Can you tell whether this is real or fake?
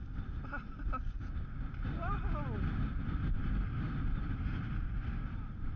real